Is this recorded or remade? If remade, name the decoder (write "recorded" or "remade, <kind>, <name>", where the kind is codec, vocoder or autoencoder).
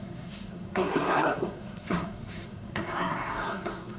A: remade, codec, SNAC